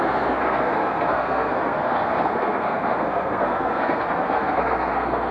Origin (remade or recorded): remade